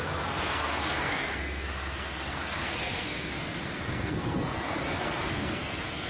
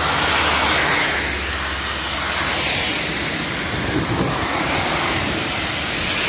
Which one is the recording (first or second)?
second